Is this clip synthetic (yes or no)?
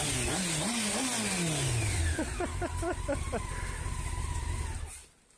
no